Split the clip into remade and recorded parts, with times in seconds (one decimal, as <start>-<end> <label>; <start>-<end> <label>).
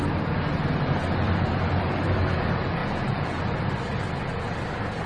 0.0-2.8 recorded; 2.8-3.6 remade; 3.6-5.1 recorded